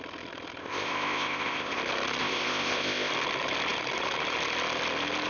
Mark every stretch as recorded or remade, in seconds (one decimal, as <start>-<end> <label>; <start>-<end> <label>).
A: 0.0-0.6 recorded; 0.6-1.8 remade; 1.8-2.2 recorded; 2.2-3.1 remade; 3.1-5.3 recorded